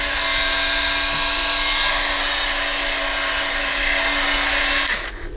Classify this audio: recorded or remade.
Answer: recorded